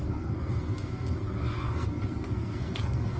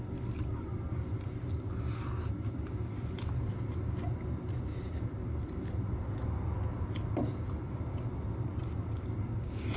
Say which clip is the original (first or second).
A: second